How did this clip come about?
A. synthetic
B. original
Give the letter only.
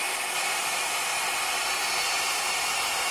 B